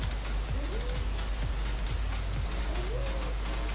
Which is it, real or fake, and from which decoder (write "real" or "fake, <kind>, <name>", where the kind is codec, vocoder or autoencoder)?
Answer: real